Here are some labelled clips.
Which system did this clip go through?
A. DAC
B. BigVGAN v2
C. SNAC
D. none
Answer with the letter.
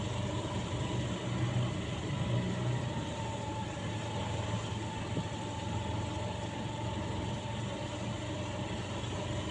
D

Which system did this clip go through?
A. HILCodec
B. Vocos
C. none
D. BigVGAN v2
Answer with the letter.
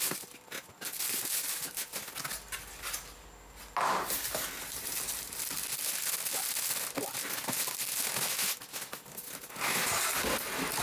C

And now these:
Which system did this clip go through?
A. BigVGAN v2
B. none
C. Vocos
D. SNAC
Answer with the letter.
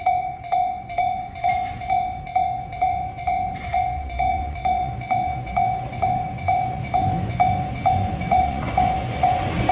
C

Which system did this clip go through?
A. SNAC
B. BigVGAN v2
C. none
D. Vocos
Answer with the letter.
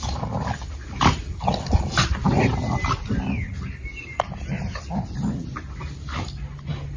C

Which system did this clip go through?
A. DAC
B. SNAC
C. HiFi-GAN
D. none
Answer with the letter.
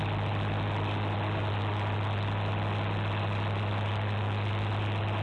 D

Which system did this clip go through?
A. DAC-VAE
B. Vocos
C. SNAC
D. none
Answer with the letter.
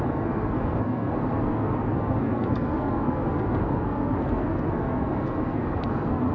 C